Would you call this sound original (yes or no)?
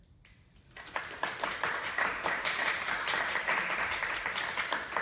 yes